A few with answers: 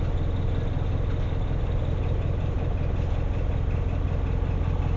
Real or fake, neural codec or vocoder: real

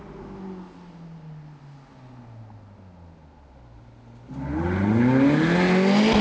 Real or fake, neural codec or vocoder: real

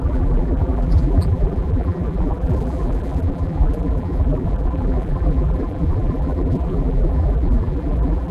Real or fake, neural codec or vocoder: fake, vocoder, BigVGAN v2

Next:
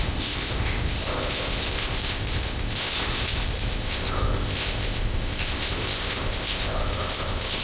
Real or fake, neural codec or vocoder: fake, codec, ZipCodec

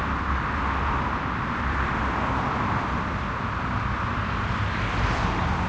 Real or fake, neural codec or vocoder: fake, vocoder, BigVGAN v2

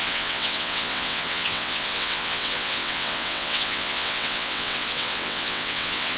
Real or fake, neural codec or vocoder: fake, vocoder, WaveNeXt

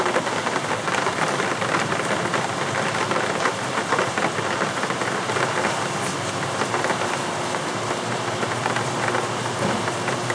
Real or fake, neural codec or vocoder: real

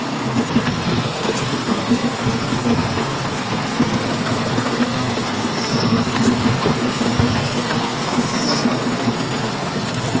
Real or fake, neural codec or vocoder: fake, codec, SNAC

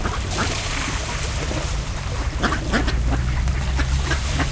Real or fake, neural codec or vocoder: real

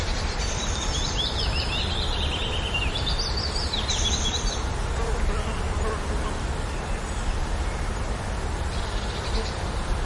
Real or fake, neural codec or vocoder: fake, vocoder, BigVGAN v2